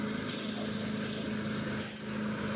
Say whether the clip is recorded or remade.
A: recorded